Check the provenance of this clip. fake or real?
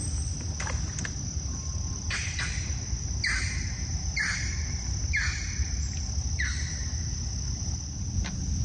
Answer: real